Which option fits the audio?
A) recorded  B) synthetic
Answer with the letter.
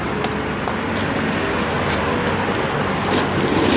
A